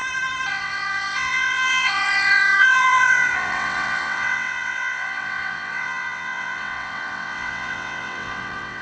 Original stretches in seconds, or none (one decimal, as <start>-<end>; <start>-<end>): 0.0-0.5